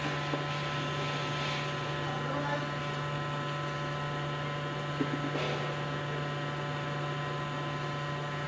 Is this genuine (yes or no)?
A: yes